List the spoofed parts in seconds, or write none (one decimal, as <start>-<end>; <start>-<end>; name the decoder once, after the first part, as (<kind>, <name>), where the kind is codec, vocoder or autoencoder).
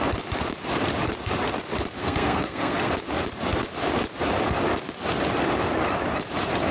2.0-2.9 (codec, SNAC)